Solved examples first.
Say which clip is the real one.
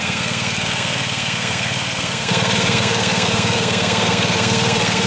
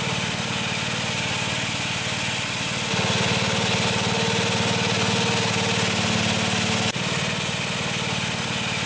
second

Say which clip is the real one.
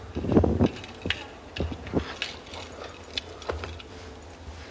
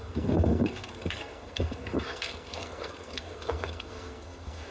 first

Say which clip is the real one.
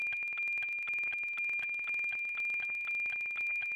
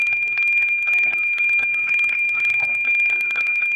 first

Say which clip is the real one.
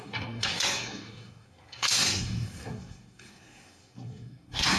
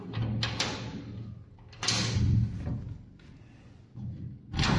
second